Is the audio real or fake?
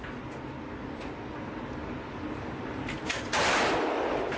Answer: real